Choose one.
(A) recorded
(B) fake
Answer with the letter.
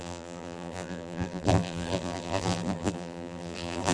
B